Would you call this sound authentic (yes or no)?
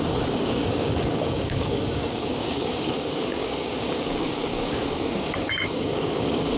no